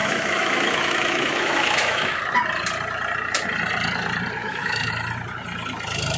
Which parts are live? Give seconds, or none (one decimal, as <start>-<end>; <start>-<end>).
2.2-4.4; 4.9-6.2